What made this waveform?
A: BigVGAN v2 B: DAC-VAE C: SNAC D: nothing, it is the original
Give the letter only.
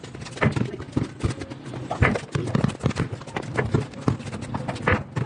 D